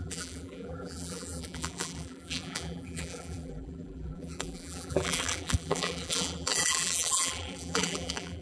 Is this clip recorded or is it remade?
remade